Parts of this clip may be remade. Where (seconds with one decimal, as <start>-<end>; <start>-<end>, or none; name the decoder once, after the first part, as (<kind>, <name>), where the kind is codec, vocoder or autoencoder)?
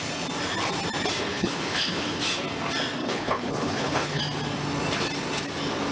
1.3-2.1 (codec, HILCodec); 3.0-4.2